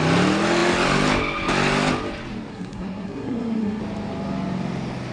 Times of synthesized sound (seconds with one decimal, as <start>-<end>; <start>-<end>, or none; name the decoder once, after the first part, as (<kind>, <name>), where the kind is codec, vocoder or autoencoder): 2.5-3.8 (codec, SNAC)